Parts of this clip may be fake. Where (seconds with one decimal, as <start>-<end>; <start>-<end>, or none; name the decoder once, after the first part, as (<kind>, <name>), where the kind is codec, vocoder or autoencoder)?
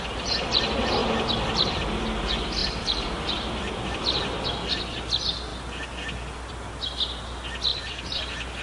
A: 2.6-4.2 (vocoder, BigVGAN v2); 7.7-8.2